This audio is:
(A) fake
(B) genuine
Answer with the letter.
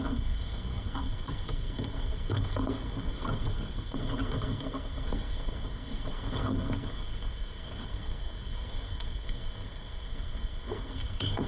A